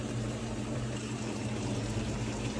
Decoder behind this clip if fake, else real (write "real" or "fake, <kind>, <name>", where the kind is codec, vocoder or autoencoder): fake, vocoder, BigVGAN v2